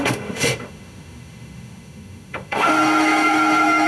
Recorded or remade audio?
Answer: remade